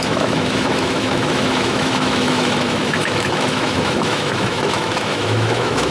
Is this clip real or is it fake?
fake